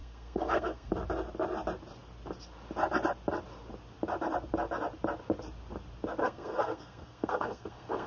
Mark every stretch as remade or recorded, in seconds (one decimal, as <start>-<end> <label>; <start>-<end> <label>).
0.0-0.9 remade; 0.9-6.2 recorded; 6.2-8.1 remade